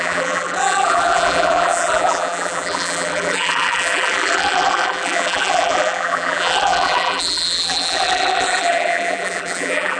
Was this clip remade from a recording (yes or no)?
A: yes